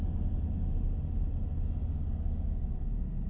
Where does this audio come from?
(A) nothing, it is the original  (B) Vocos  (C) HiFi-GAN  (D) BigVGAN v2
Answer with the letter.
A